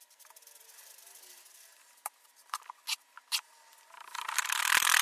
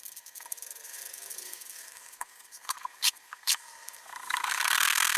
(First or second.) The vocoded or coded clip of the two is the second